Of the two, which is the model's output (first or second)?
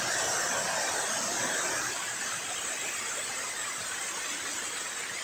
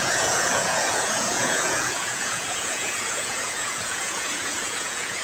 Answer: second